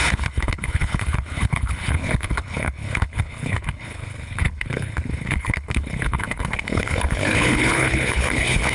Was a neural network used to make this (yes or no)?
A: yes